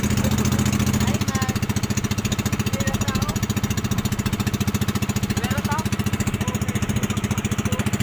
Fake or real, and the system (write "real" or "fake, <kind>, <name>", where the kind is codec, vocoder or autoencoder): real